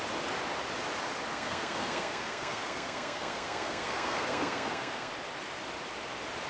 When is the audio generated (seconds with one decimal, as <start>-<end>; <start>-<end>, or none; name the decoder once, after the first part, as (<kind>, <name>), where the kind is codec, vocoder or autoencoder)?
1.3-5.1 (codec, SNAC)